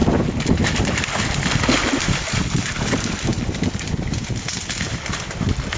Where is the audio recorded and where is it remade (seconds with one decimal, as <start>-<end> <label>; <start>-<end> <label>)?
0.0-5.8 recorded